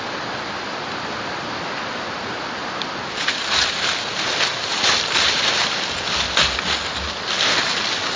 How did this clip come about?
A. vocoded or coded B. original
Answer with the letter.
B